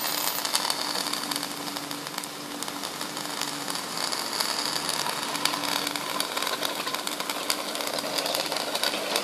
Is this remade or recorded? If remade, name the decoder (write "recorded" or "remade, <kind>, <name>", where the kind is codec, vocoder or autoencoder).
recorded